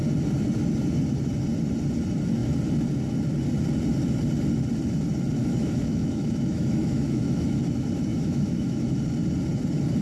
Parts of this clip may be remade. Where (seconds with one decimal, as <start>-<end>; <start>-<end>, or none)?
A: 5.4-7.6; 8.1-9.0